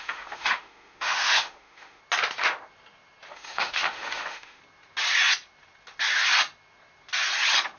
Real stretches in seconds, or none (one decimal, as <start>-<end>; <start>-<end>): 2.0-3.3; 4.6-7.8